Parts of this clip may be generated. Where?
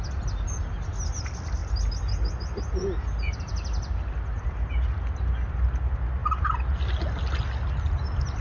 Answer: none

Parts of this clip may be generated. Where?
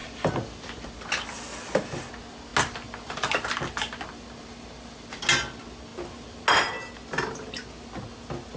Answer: 0.0-0.9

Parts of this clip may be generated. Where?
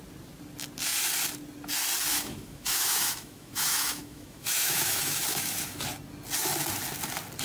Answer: 2.1-5.8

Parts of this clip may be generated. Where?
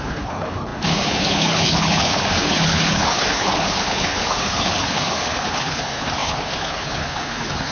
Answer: 0.0-7.7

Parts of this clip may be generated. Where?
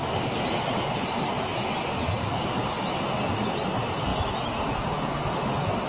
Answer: none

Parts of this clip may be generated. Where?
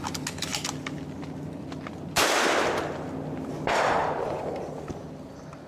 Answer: none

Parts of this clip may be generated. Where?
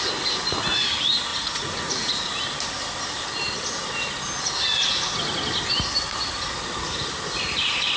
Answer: 1.3-2.4